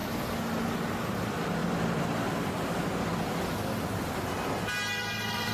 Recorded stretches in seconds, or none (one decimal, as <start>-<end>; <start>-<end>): 0.0-1.1; 1.6-4.9